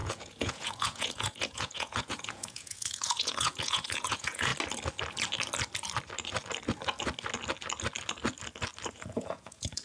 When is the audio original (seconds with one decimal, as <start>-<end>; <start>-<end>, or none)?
4.5-8.9